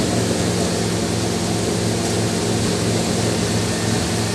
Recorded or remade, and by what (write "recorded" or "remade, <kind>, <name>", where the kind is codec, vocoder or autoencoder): recorded